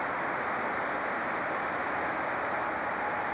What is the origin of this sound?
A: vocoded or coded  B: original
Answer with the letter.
B